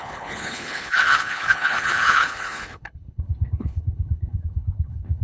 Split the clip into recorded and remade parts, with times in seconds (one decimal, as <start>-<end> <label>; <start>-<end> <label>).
0.0-5.2 remade